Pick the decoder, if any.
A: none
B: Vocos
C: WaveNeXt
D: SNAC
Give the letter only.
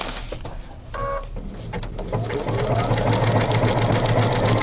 A